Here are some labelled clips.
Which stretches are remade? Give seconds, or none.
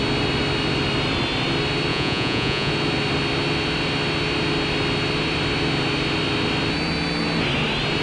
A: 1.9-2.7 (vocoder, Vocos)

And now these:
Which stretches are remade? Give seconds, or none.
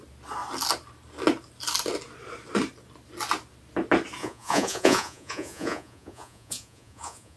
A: 4.2-7.4 (vocoder, Vocos)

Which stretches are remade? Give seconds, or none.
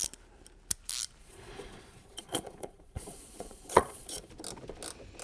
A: 1.2-4.3 (vocoder, Vocos)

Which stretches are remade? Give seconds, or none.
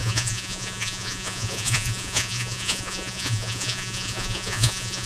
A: 0.0-5.1 (vocoder, Vocos)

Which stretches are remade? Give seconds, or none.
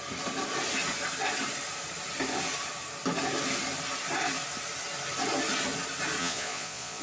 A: 6.2-7.0 (vocoder, Vocos)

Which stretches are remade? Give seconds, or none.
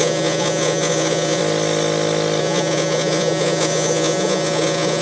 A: 0.0-1.4 (vocoder, Vocos); 2.4-5.0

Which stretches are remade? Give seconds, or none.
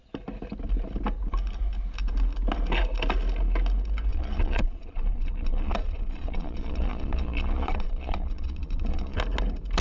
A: 4.1-9.2 (vocoder, Vocos)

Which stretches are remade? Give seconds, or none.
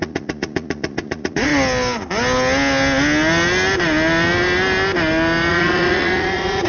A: 0.0-1.5 (vocoder, Vocos); 5.5-6.7